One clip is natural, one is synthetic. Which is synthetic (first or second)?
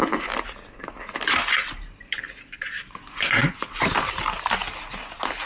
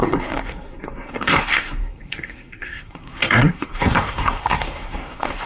second